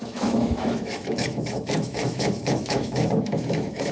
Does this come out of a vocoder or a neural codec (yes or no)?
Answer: yes